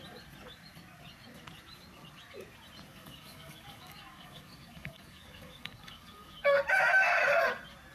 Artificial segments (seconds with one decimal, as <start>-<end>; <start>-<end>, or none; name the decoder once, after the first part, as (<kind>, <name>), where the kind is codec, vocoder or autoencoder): 2.9-6.6 (codec, DAC)